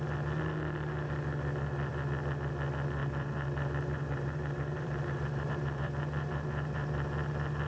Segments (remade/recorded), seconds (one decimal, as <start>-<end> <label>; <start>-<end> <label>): 0.0-3.0 recorded; 3.0-7.1 remade; 7.1-7.7 recorded